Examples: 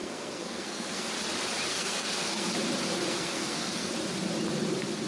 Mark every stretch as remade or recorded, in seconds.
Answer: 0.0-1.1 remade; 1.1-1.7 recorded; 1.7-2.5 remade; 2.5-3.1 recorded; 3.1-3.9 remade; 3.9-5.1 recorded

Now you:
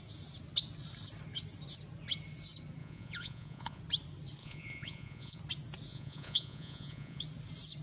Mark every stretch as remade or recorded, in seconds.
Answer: 0.0-2.8 recorded; 2.8-3.8 remade; 3.8-4.4 recorded; 4.4-5.4 remade; 5.4-5.9 recorded; 5.9-7.2 remade; 7.2-7.8 recorded

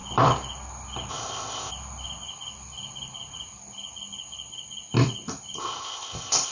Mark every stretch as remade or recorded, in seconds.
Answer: 0.0-1.1 recorded; 1.1-1.7 remade; 1.7-5.6 recorded; 5.6-6.5 remade